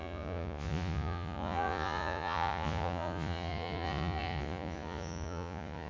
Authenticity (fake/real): fake